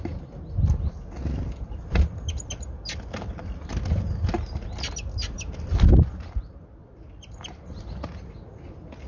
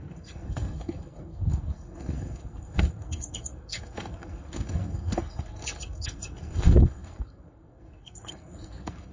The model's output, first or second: second